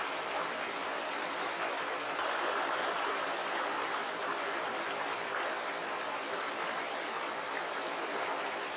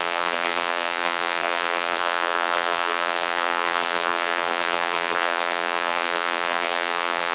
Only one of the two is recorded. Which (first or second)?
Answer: first